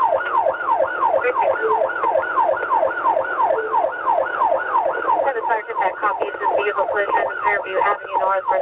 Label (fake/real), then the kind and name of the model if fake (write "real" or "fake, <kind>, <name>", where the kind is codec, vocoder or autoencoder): real